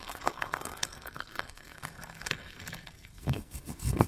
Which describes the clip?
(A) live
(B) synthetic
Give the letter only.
B